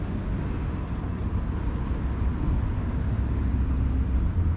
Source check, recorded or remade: recorded